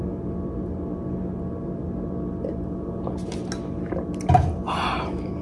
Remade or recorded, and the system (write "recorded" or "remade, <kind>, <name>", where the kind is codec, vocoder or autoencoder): recorded